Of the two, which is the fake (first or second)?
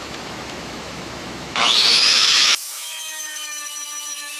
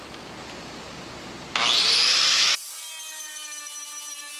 first